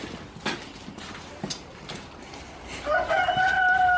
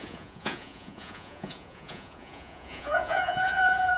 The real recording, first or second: first